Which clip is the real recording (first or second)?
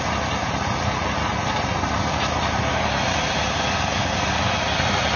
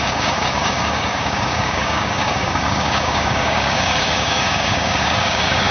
first